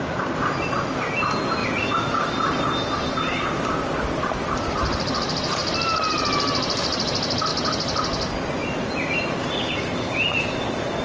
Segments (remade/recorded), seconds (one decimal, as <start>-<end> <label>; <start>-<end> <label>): 0.0-11.0 recorded